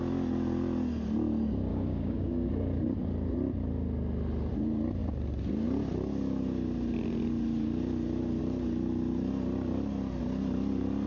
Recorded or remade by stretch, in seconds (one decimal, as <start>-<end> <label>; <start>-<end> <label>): 0.0-1.7 recorded; 1.7-2.5 remade; 2.5-11.1 recorded